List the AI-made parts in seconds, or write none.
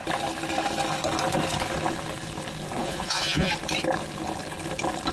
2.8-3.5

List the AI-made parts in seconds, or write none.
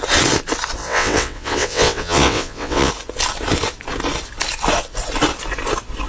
0.8-2.9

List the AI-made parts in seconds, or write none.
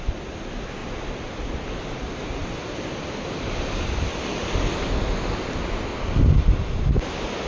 none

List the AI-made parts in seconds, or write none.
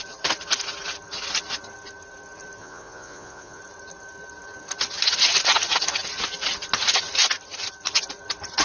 2.6-3.6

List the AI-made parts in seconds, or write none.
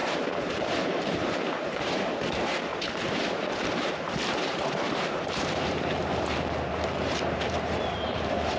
0.0-2.7; 4.8-8.6